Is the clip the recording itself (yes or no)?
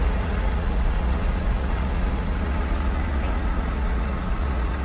no